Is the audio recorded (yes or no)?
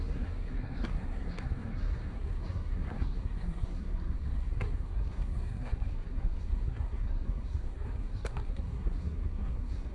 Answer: no